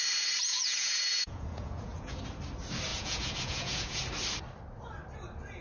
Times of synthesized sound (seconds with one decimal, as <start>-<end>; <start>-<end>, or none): 0.5-2.2; 2.9-4.0